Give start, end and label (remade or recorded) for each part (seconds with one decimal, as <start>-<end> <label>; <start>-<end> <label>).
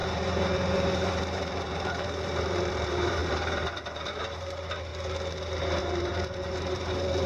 0.0-4.9 remade; 4.9-5.8 recorded; 5.8-7.3 remade